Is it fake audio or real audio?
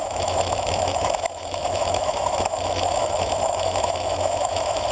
fake